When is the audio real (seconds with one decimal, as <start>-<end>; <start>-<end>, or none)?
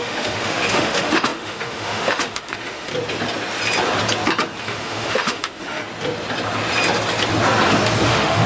2.9-4.6; 5.8-8.1